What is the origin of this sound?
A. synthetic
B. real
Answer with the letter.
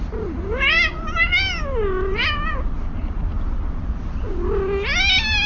B